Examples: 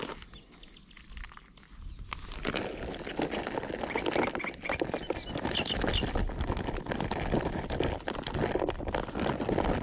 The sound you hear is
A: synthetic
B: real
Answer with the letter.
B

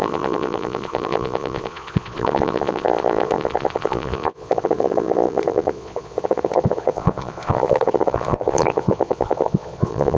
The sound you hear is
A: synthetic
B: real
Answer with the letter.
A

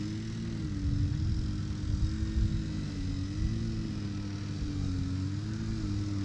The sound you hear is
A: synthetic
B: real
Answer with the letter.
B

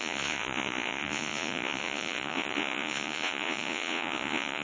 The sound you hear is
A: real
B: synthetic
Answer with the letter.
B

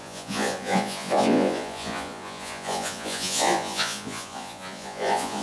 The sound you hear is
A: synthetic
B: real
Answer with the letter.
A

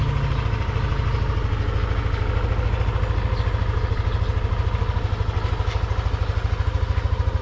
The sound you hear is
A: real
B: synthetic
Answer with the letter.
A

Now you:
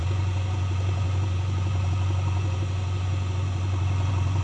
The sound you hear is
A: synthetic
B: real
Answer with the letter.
A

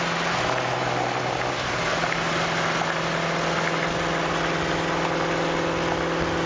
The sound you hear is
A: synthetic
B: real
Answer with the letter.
B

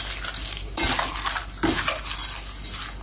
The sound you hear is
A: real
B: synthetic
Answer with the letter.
A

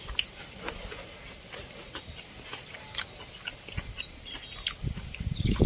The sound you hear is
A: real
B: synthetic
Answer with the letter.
A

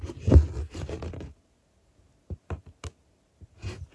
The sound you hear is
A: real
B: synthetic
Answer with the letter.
A